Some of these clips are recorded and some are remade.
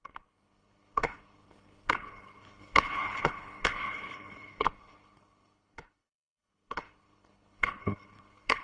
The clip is remade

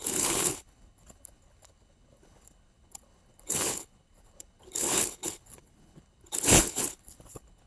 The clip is remade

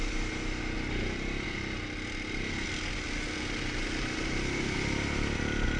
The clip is recorded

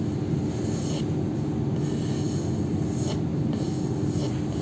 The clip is recorded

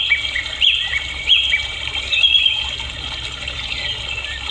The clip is recorded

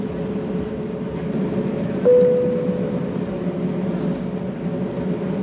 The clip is recorded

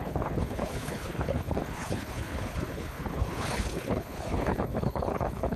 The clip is remade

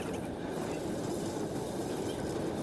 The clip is recorded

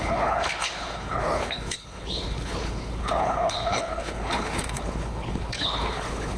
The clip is remade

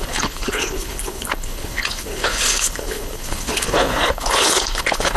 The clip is remade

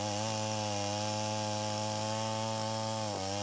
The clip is recorded